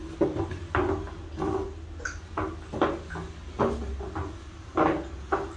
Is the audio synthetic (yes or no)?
no